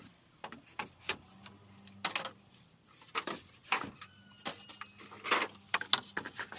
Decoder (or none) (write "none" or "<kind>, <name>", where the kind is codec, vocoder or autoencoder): none